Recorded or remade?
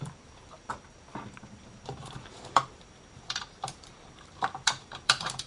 remade